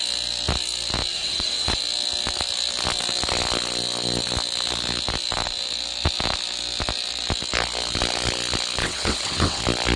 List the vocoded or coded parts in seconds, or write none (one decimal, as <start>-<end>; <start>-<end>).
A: 1.1-1.8; 8.8-9.6